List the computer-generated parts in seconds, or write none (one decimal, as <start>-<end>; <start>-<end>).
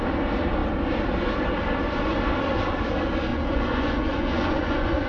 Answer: 3.3-5.1